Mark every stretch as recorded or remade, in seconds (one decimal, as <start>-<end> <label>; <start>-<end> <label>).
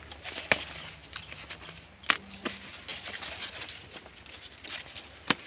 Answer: 0.0-2.9 recorded; 2.9-3.5 remade; 3.5-5.5 recorded